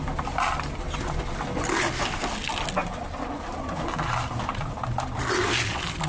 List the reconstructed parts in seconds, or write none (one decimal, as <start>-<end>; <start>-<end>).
none